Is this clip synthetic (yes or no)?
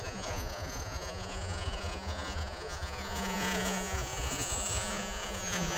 yes